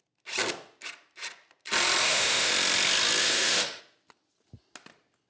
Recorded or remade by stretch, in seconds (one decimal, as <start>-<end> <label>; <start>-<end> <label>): 0.0-2.0 recorded; 2.0-2.5 remade; 2.5-3.2 recorded; 3.2-3.8 remade; 3.8-5.3 recorded